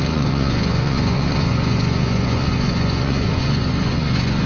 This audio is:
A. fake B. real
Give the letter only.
A